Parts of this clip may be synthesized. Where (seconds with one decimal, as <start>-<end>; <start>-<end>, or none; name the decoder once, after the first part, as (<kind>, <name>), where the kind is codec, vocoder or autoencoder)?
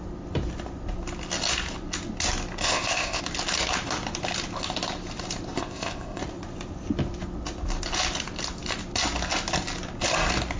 2.6-3.2 (codec, ZipCodec); 5.6-6.2